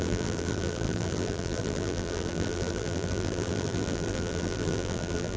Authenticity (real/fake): fake